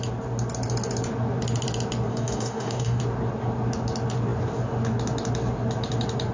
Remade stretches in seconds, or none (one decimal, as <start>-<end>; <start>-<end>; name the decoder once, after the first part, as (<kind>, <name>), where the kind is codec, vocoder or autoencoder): 2.1-3.0 (codec, DAC)